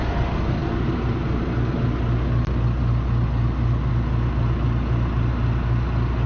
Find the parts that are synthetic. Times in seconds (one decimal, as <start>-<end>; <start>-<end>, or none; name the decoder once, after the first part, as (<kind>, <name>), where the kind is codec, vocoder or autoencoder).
none